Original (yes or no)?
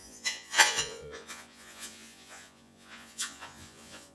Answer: no